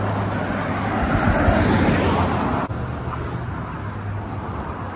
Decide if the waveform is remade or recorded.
recorded